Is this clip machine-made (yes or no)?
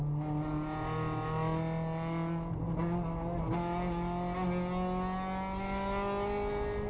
no